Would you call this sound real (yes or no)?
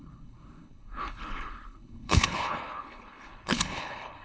no